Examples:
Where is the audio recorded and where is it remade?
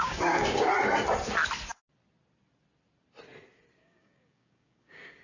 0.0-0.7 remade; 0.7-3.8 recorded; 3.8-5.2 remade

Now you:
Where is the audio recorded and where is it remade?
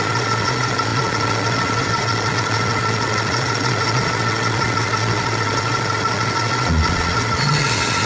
0.0-8.1 remade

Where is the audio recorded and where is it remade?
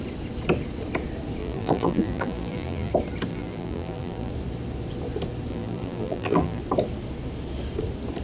0.0-1.4 recorded; 1.4-2.9 remade; 2.9-3.3 recorded; 3.3-4.3 remade; 4.3-5.5 recorded; 5.5-6.6 remade; 6.6-8.2 recorded